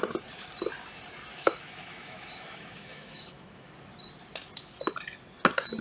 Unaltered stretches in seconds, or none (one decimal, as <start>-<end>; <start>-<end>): 0.0-1.3; 3.7-5.8